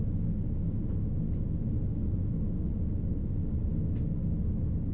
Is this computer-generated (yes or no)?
no